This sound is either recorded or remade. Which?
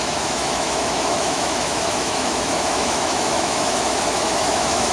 remade